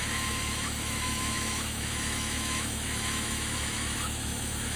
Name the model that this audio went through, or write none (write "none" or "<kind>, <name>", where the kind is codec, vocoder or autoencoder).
autoencoder, DAC-VAE